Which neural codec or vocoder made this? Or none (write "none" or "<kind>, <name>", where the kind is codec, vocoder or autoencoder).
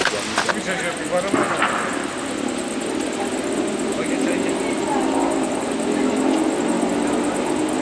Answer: none